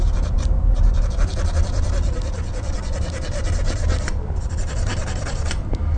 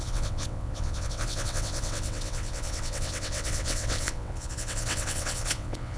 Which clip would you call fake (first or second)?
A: second